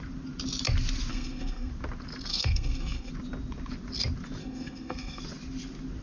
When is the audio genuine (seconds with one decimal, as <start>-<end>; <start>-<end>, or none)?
0.0-1.1; 1.7-2.3; 3.1-4.4; 5.2-6.0